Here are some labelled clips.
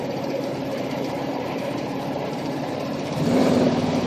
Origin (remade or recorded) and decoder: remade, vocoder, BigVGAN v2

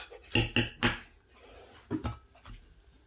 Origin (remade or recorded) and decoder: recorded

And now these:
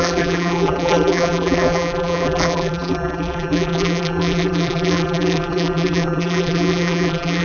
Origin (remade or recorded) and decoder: remade, vocoder, BigVGAN v2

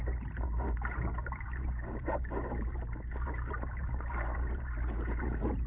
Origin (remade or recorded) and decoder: remade, vocoder, BigVGAN v2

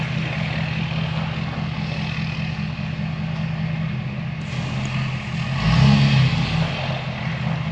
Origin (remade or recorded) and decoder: recorded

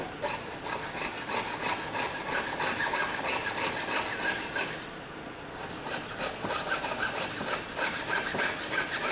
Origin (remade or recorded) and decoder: recorded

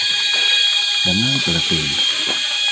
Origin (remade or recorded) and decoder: remade, vocoder, BigVGAN v2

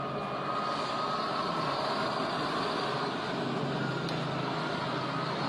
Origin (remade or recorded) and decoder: recorded